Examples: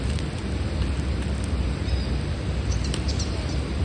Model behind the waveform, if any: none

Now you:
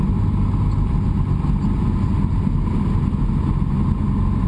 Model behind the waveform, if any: none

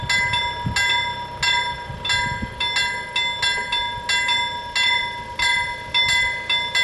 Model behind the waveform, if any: none